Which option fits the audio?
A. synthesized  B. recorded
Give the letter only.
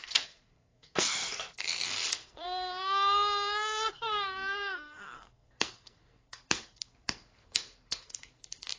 A